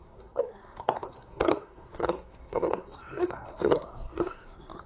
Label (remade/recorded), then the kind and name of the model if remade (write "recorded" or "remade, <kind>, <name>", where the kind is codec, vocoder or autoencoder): remade, codec, SNAC